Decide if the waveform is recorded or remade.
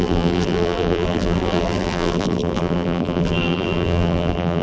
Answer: remade